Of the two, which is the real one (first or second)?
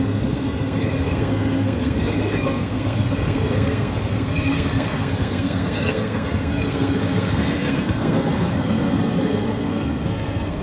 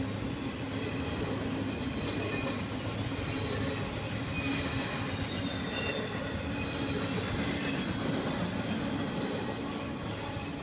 second